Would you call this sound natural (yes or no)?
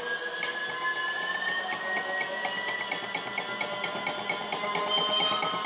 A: yes